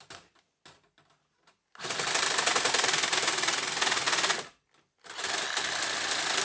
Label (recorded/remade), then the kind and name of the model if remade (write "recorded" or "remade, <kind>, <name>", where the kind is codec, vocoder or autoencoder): recorded